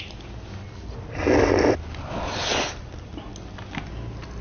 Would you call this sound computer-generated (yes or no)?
no